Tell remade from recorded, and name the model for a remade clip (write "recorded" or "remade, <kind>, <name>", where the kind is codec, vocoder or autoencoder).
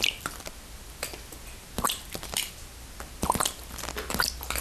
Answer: recorded